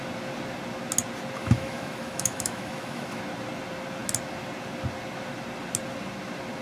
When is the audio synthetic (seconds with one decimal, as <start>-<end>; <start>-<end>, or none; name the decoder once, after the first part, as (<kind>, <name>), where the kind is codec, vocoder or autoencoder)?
1.4-3.2 (autoencoder, DAC-VAE)